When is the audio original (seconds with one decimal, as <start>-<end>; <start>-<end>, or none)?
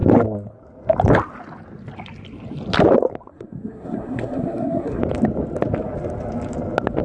0.0-3.3; 5.0-7.0